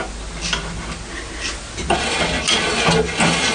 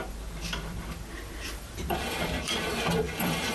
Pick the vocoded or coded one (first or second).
second